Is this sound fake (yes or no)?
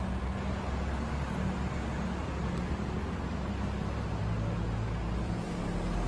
no